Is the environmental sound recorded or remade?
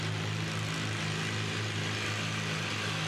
recorded